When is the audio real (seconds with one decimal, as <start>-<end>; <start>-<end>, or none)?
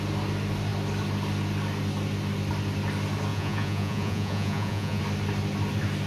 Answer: 0.0-3.3; 5.0-6.1